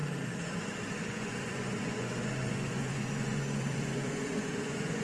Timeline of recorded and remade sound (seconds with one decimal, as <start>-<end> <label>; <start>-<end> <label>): 0.0-1.1 recorded; 1.1-5.0 remade